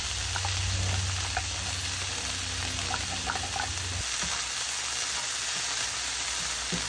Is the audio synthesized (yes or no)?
no